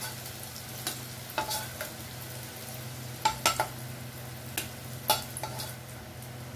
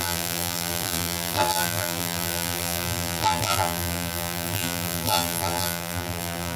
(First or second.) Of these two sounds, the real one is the first